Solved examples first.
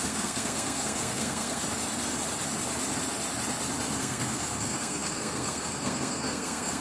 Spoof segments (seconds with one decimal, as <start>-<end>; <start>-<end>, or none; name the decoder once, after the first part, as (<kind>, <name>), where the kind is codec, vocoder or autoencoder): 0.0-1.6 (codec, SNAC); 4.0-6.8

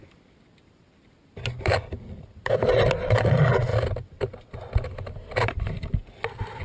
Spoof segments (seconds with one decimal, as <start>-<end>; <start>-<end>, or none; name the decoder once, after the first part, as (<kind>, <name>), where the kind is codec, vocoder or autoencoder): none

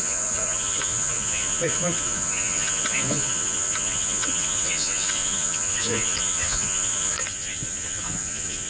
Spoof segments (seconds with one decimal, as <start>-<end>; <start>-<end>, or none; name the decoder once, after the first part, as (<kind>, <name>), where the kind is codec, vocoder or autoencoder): 0.0-8.7 (vocoder, Vocos)

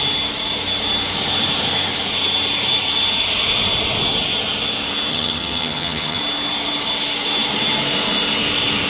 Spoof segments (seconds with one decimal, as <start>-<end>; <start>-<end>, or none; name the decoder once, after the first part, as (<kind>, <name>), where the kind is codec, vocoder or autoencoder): 5.1-6.2 (vocoder, HiFi-GAN)

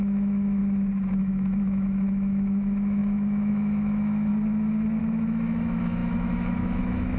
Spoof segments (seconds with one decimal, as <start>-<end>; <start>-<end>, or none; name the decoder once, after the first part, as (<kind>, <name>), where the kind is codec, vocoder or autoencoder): 0.0-0.6 (autoencoder, DAC-VAE); 1.2-4.3; 5.0-7.2

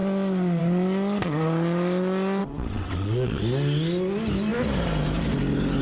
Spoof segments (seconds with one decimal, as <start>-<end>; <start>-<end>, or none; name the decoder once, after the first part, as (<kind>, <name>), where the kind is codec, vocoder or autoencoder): 2.4-3.4 (vocoder, WaveNeXt)

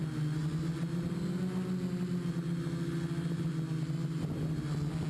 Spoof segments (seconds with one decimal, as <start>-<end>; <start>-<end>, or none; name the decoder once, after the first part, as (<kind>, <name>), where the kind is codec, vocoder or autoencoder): none

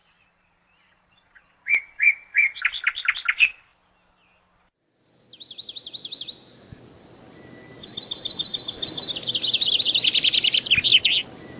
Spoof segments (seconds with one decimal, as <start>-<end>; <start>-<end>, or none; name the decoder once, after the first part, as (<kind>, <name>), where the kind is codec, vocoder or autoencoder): 0.0-2.6 (vocoder, Vocos)